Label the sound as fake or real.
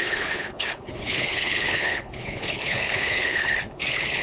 fake